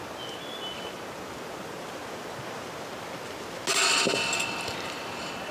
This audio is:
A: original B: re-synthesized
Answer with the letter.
A